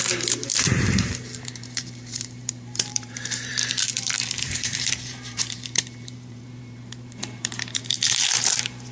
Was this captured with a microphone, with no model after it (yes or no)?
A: no